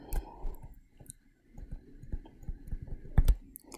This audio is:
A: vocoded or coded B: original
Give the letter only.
B